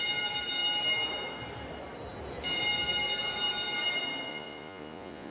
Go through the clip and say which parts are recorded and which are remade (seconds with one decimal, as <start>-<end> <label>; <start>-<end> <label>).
0.0-4.3 recorded; 4.3-5.3 remade